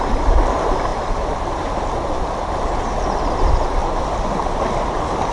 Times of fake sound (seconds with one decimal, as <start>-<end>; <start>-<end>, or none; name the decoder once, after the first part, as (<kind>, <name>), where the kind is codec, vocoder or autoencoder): none